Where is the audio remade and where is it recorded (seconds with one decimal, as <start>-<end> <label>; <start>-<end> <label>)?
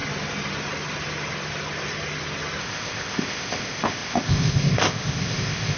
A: 0.0-2.6 recorded; 2.6-5.8 remade